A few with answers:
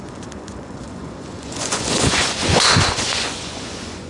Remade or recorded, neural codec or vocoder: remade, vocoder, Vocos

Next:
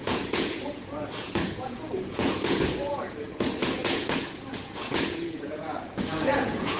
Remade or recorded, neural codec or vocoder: remade, vocoder, Vocos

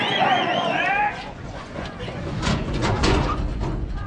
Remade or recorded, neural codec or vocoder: remade, vocoder, Vocos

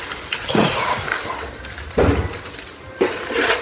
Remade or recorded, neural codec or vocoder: recorded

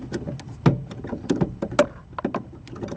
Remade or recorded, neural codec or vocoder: recorded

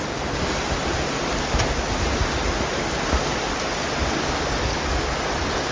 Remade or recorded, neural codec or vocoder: recorded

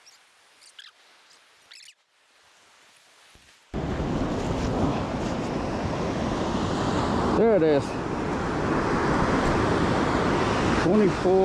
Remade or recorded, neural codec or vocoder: recorded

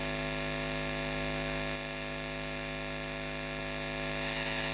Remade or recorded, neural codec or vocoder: recorded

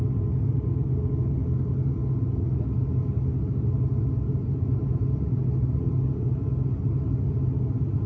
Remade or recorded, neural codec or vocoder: recorded